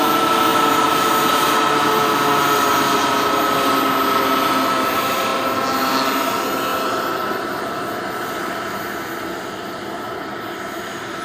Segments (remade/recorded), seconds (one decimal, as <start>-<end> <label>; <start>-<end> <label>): 0.0-11.2 recorded